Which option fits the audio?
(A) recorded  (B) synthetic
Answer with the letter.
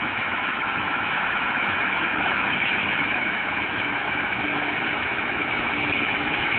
B